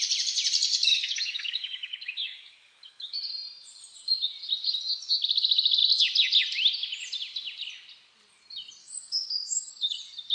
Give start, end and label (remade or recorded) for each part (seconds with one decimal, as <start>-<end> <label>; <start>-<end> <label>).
0.0-0.7 recorded; 0.7-3.2 remade; 3.2-8.8 recorded; 8.8-9.7 remade; 9.7-10.3 recorded